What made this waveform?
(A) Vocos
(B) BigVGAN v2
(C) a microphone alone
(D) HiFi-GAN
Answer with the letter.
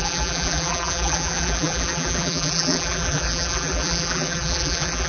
B